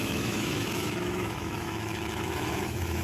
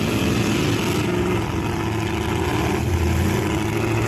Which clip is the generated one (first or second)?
first